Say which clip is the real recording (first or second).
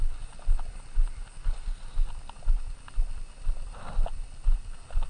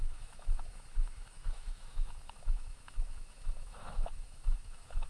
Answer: first